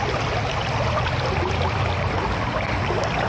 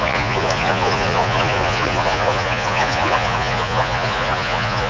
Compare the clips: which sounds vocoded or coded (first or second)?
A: second